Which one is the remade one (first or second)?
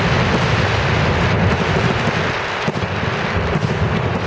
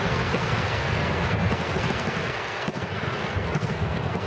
second